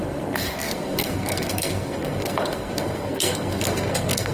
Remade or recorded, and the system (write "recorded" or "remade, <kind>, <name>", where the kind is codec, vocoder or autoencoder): remade, codec, SNAC